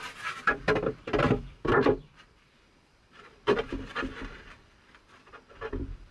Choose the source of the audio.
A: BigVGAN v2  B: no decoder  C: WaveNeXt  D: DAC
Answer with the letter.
A